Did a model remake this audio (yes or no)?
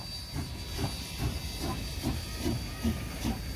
no